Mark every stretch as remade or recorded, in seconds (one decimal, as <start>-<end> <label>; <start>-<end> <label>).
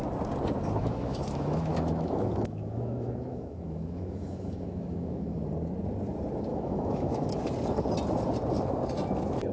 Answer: 0.0-0.8 recorded; 0.8-5.4 remade; 5.4-6.5 recorded; 6.5-7.4 remade; 7.4-9.5 recorded